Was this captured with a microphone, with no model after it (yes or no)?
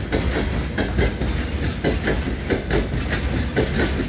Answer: yes